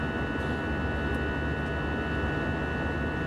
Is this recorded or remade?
recorded